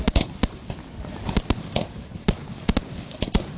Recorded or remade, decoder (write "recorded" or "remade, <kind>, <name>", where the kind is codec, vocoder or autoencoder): recorded